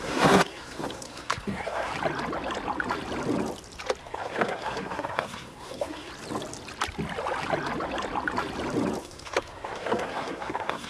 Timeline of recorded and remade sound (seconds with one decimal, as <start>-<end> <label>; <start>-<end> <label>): 0.0-1.9 remade; 1.9-4.0 recorded; 4.0-6.1 remade; 6.1-9.0 recorded; 9.0-10.9 remade